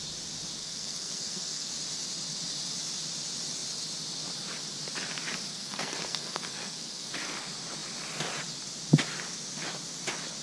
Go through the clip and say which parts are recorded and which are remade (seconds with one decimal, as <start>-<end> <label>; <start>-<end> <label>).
0.0-0.6 recorded; 0.6-1.7 remade; 1.7-5.5 recorded; 5.5-7.1 remade; 7.1-10.4 recorded